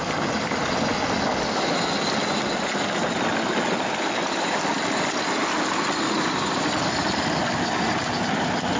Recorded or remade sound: recorded